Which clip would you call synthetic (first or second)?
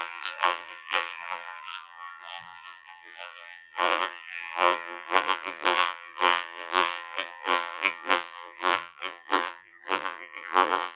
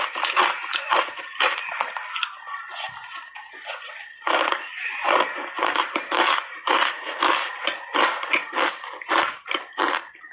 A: first